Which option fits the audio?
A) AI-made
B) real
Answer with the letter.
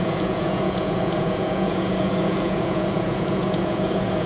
A